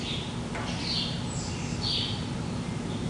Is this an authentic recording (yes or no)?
yes